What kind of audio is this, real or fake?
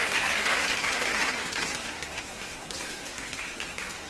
fake